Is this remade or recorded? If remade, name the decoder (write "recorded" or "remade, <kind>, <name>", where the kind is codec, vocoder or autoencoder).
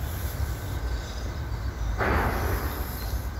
remade, vocoder, BigVGAN v2